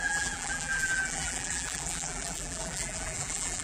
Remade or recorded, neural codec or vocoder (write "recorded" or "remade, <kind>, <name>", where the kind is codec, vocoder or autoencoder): remade, vocoder, BigVGAN v2